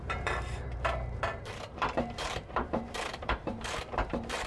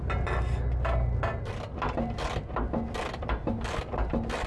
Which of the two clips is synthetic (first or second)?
first